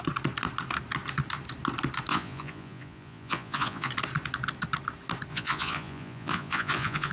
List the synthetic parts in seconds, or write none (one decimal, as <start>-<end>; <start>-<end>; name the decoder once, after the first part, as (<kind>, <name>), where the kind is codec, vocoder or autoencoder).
2.1-3.9 (vocoder, Vocos); 5.3-7.1